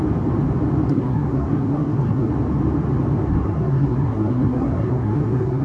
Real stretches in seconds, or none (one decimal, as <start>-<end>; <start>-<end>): 0.0-0.9; 2.3-3.3